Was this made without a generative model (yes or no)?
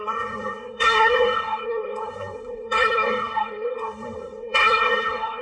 no